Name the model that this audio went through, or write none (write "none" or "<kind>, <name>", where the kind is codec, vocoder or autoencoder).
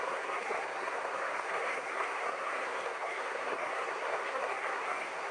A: codec, SNAC